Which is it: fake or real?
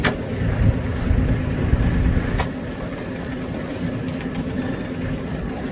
real